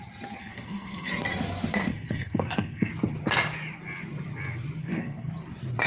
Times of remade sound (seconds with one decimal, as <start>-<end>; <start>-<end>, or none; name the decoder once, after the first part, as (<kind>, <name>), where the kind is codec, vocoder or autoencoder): 0.4-1.1 (codec, SNAC); 1.9-2.9; 4.8-5.3